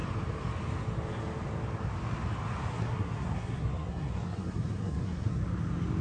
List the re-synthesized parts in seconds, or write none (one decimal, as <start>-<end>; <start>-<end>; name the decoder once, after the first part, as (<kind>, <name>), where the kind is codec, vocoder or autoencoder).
2.7-5.4 (codec, SNAC)